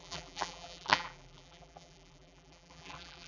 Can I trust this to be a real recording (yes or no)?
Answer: no